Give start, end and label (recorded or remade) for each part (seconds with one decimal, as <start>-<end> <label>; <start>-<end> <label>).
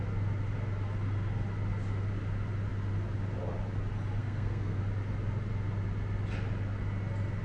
0.0-4.2 recorded; 4.2-4.8 remade; 4.8-7.4 recorded